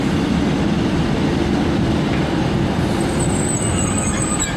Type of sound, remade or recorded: remade